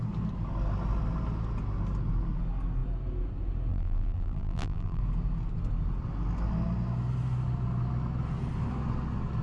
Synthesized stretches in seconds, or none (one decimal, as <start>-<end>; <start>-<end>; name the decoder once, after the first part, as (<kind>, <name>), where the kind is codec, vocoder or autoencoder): 3.7-5.0 (vocoder, BigVGAN v2)